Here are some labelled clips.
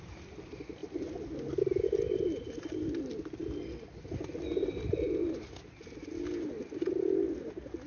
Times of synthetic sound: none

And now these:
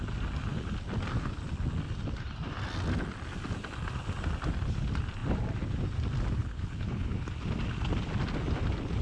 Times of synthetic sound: 6.4-7.1 (codec, HILCodec)

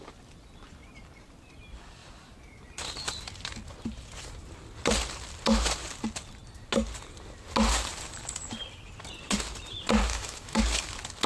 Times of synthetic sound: 10.1-10.6 (autoencoder, DAC-VAE)

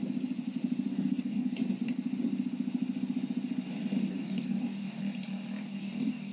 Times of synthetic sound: 0.9-1.6 (codec, DAC); 4.1-5.0; 5.8-6.3

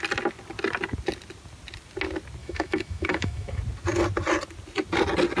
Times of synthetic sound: 2.4-3.6 (autoencoder, DAC-VAE)

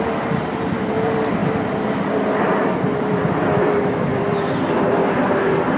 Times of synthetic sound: 0.0-5.8 (vocoder, BigVGAN v2)